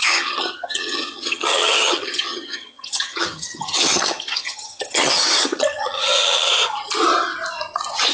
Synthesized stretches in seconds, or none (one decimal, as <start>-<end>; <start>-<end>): 0.0-6.5